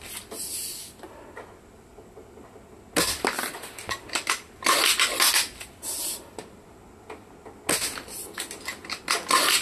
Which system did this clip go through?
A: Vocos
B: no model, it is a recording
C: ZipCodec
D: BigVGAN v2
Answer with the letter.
B